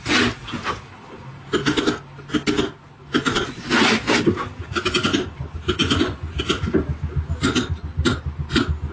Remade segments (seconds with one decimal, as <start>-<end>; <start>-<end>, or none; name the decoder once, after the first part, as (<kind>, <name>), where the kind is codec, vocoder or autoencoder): 5.8-6.4 (vocoder, Vocos)